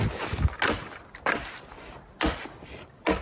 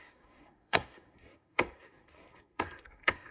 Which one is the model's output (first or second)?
second